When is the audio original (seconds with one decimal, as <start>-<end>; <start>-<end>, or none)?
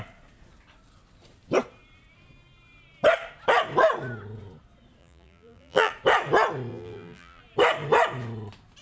0.0-5.0; 5.9-6.7; 7.4-8.8